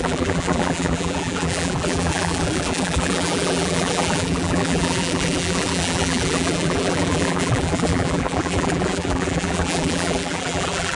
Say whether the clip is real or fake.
fake